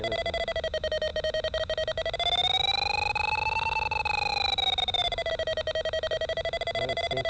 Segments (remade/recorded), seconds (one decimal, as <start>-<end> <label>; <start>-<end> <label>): 0.0-1.1 recorded; 1.1-1.6 remade; 1.6-4.3 recorded; 4.3-5.3 remade; 5.3-7.3 recorded

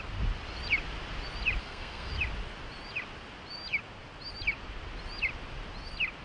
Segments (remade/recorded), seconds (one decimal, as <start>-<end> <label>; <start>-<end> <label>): 0.0-1.6 recorded; 1.6-2.1 remade; 2.1-6.2 recorded

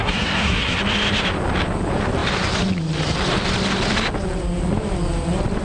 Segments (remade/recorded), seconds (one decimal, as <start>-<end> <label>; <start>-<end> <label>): 0.0-0.8 remade; 0.8-5.6 recorded